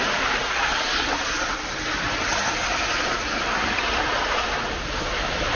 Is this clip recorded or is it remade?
recorded